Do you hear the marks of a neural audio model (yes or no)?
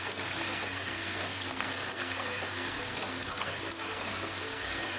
yes